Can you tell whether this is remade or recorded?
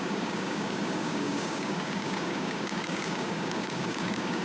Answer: remade